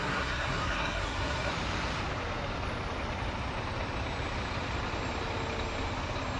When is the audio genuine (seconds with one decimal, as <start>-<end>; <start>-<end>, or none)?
1.5-6.4